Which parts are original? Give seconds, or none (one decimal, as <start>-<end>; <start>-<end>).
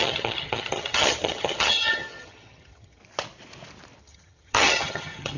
3.0-4.0